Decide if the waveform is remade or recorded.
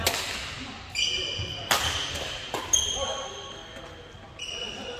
recorded